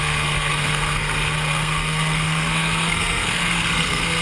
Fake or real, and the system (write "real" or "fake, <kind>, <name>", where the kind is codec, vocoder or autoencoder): fake, codec, SNAC